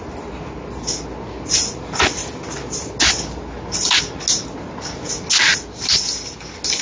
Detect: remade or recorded recorded